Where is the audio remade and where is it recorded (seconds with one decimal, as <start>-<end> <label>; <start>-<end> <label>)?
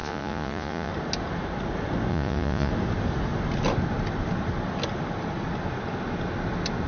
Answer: 0.0-0.9 remade; 0.9-2.1 recorded; 2.1-2.7 remade; 2.7-6.9 recorded